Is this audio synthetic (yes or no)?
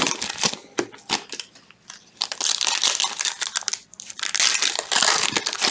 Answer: no